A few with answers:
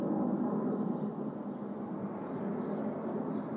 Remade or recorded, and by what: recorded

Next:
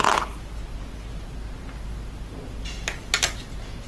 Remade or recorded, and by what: recorded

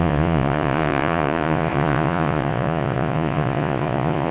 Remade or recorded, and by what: remade, vocoder, Vocos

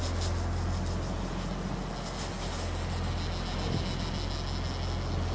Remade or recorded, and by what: recorded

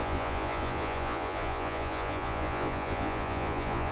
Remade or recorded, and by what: remade, vocoder, Vocos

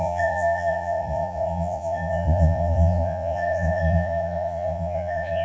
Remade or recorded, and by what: remade, vocoder, Vocos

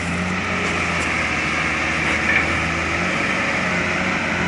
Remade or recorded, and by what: recorded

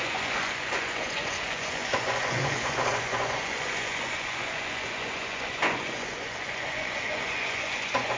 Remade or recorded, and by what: remade, vocoder, Vocos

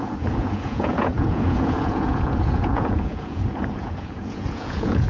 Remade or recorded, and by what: remade, vocoder, Vocos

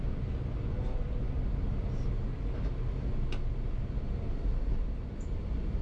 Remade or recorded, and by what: recorded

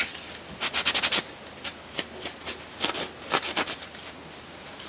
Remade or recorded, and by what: recorded